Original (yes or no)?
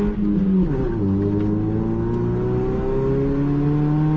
yes